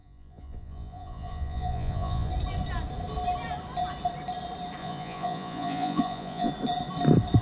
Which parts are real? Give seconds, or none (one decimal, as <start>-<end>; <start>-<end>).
2.3-4.8; 6.5-7.4